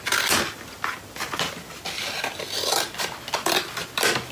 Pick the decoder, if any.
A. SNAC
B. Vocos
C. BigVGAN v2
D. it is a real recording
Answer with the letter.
D